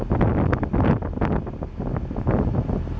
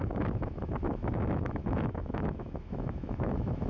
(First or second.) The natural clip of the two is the first